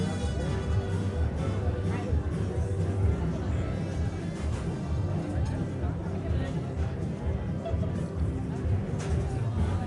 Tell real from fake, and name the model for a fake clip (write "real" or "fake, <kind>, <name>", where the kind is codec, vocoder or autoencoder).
real